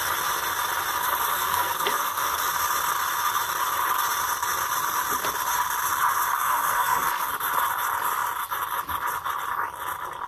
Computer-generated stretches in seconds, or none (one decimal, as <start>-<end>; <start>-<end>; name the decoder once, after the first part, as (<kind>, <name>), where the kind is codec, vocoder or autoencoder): 1.3-2.4 (codec, SNAC); 6.3-7.3